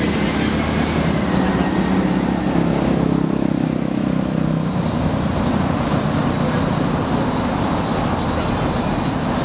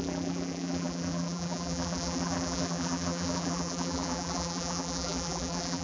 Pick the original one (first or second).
first